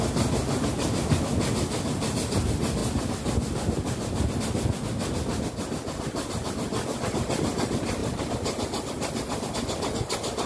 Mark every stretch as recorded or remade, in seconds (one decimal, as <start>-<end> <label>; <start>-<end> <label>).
0.0-10.5 recorded